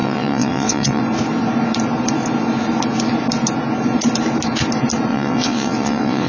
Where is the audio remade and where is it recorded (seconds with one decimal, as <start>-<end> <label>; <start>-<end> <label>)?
0.0-1.0 remade; 1.0-5.1 recorded; 5.1-6.3 remade